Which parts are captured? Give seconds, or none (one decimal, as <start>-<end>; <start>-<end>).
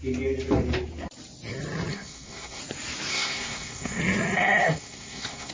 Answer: 0.0-1.9; 2.6-3.1; 4.0-4.6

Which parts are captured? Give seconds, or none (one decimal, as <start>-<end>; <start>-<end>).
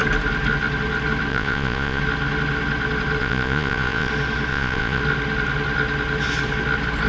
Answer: 0.0-1.3; 2.0-3.2; 4.1-4.5; 5.0-7.1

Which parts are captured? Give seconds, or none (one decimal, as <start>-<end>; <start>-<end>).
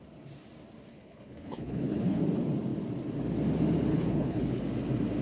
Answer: 0.0-0.9; 2.2-3.9; 4.6-5.2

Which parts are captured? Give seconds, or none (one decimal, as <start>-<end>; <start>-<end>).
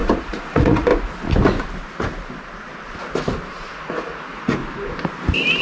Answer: 0.9-3.5; 4.6-5.6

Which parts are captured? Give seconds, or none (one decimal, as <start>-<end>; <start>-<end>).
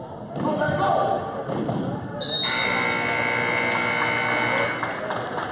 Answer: 0.0-5.5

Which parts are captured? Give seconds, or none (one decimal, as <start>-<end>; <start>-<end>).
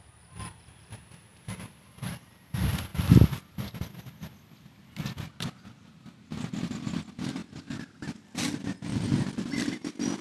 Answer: 0.0-10.2